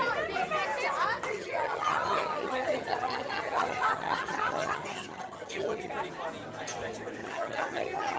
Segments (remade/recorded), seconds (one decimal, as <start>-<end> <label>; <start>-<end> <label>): 0.0-1.3 recorded; 1.3-5.9 remade; 5.9-7.2 recorded; 7.2-8.2 remade